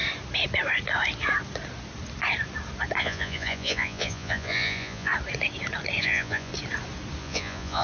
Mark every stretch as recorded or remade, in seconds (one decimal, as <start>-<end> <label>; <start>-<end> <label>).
0.0-3.0 recorded; 3.0-5.1 remade; 5.1-6.0 recorded; 6.0-6.5 remade; 6.5-7.2 recorded; 7.2-7.8 remade